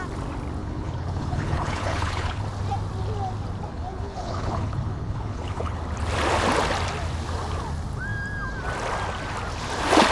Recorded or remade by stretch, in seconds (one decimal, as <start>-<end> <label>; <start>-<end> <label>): 0.0-0.6 recorded; 0.6-2.4 remade; 2.4-3.7 recorded; 3.7-5.8 remade; 5.8-10.1 recorded